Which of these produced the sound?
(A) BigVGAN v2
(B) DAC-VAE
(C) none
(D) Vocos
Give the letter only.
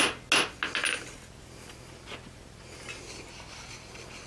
C